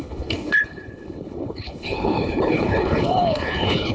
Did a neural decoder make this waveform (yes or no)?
yes